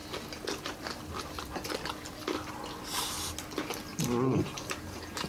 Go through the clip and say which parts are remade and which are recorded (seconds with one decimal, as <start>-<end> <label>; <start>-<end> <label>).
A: 0.0-3.9 recorded; 3.9-5.3 remade